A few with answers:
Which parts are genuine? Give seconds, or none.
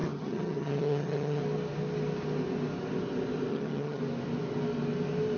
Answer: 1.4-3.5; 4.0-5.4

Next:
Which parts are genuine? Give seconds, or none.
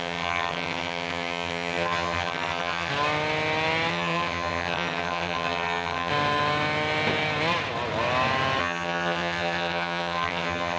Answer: 2.9-3.9; 6.1-8.6